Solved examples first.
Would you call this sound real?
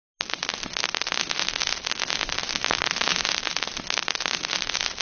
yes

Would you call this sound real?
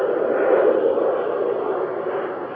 yes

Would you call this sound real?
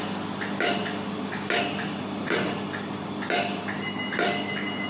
yes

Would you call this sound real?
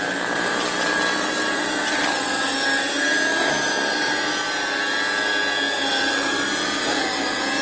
yes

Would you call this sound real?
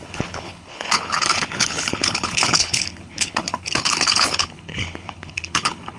no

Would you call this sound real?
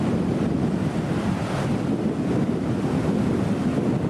yes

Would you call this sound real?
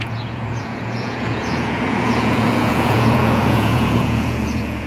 no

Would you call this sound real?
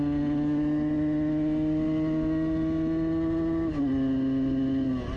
yes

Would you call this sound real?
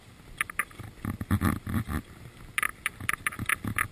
yes